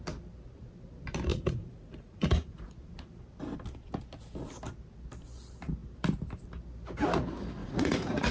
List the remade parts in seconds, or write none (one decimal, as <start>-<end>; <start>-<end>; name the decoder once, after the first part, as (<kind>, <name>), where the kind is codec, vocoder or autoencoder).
1.3-2.7 (vocoder, Vocos); 7.6-8.3